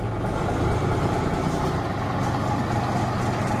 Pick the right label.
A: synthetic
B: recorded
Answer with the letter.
B